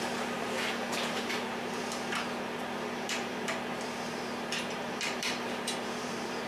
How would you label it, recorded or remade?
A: remade